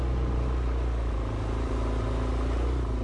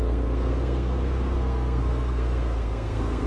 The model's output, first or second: second